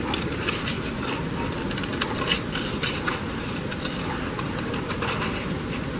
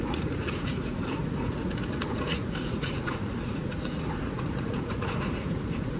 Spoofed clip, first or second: second